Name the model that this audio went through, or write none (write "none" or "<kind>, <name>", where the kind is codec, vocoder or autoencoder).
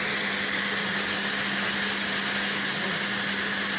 none